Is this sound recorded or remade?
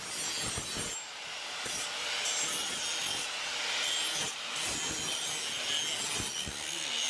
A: recorded